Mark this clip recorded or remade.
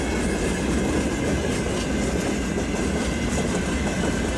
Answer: recorded